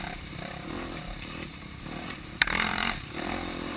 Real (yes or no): no